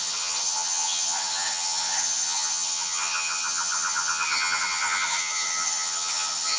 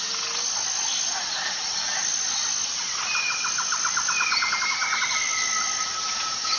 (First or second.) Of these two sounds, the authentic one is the second